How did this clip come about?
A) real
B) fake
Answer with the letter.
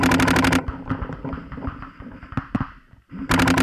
A